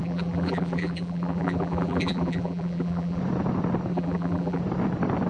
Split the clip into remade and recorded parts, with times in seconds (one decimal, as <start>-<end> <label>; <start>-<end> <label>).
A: 0.0-3.2 remade; 3.2-3.9 recorded; 3.9-4.6 remade; 4.6-5.3 recorded